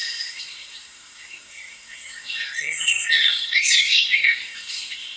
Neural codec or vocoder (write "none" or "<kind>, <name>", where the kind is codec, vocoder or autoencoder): codec, SNAC